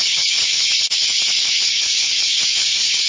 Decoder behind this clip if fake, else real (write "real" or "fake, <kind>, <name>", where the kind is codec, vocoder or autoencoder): fake, codec, DAC